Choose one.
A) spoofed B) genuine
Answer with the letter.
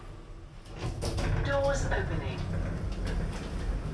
B